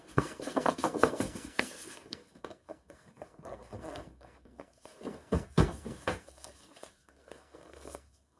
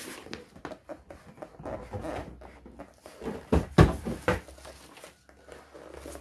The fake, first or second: first